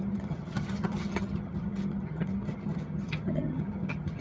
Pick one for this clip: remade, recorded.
remade